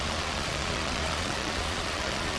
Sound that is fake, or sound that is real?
fake